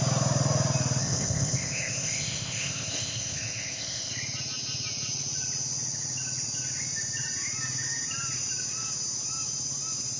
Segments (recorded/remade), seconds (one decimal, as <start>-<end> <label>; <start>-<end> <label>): 0.0-1.0 recorded; 1.0-4.1 remade; 4.1-10.2 recorded